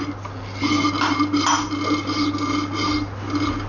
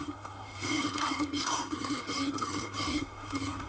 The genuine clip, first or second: first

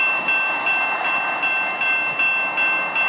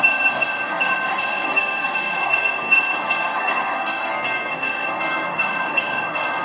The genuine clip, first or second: first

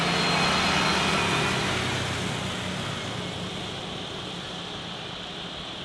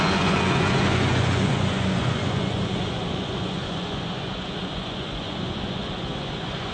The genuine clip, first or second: first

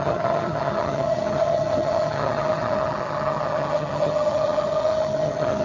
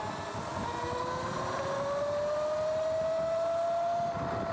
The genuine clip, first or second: second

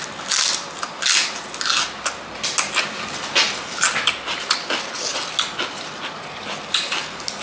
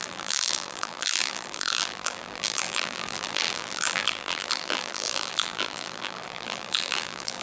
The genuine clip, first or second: first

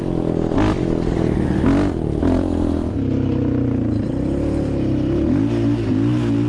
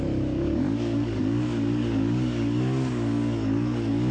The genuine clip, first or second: first